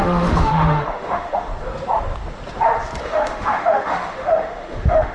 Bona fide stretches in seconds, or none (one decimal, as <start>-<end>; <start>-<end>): 1.5-3.0